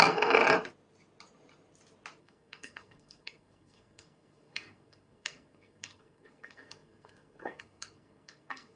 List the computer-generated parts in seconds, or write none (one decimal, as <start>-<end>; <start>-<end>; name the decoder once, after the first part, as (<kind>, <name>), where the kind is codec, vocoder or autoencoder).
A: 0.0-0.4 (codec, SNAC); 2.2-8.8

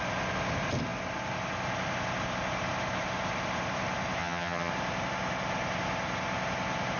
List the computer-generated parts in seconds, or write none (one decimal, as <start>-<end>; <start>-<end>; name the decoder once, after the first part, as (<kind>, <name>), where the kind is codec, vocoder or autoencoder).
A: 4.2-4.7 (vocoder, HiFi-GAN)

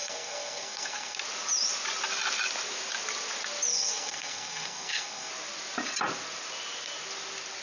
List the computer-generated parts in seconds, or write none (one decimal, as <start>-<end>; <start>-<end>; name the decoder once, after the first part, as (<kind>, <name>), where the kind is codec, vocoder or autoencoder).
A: 0.0-1.2 (codec, SNAC); 3.7-5.3

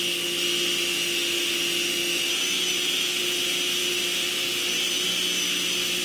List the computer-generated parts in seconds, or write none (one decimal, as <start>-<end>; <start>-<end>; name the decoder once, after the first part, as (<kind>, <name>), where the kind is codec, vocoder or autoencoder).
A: none

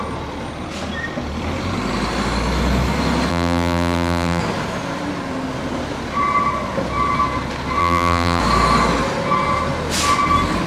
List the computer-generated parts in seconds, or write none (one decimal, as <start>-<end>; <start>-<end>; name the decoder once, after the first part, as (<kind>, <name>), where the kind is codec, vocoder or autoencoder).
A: 3.3-4.4 (vocoder, BigVGAN v2); 7.8-8.4

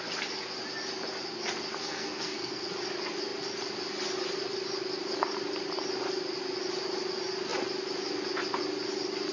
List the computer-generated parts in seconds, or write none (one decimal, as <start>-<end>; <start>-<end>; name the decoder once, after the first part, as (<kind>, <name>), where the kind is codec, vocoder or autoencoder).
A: 1.8-2.6 (codec, SNAC)